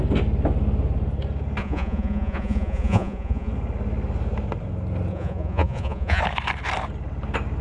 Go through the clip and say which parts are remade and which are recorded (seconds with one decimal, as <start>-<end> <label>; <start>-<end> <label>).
0.0-1.6 recorded; 1.6-3.5 remade; 3.5-5.1 recorded; 5.1-6.2 remade; 6.2-7.6 recorded